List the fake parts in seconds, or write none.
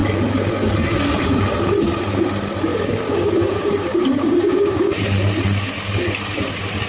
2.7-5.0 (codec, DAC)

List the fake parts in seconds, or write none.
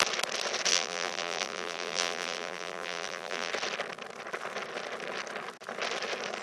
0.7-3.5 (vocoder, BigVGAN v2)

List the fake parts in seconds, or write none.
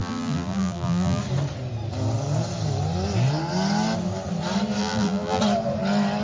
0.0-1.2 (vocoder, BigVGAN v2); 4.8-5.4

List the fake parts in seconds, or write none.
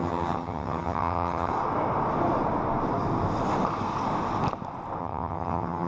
0.0-1.5 (vocoder, HiFi-GAN); 5.0-5.9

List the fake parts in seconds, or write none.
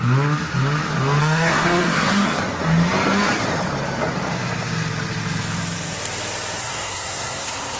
1.2-2.4 (codec, SNAC); 6.6-7.8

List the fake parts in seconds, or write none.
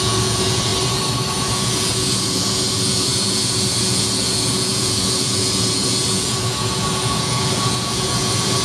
0.0-0.7 (vocoder, Vocos); 1.4-8.6